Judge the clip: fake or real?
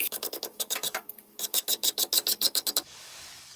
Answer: fake